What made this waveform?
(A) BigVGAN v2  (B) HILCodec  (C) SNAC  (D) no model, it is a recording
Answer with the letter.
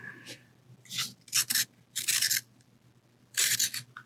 D